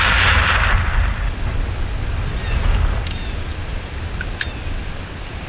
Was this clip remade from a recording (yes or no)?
no